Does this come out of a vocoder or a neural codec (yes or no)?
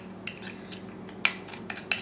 no